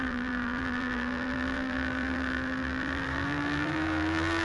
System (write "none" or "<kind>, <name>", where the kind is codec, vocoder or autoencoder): vocoder, BigVGAN v2